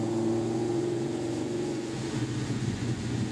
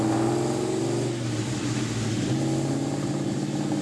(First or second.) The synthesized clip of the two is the first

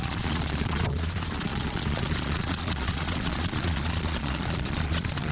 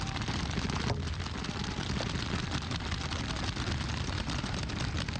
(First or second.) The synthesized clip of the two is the first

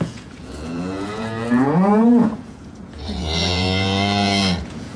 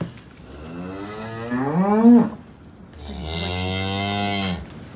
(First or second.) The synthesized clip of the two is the first